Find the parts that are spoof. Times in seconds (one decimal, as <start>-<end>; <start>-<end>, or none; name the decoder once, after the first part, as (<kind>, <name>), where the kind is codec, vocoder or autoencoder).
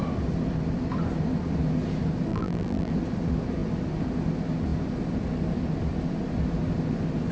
2.3-2.9 (vocoder, BigVGAN v2)